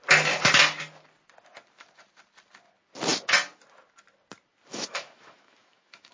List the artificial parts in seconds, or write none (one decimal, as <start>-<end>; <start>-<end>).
4.7-6.1